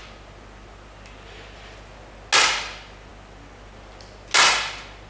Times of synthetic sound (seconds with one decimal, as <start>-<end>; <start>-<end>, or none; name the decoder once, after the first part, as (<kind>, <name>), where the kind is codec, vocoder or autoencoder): none